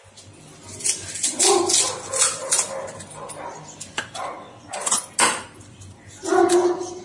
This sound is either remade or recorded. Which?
recorded